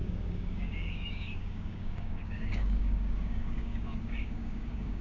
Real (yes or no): no